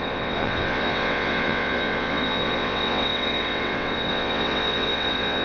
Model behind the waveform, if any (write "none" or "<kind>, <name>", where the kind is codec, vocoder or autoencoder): vocoder, WaveNeXt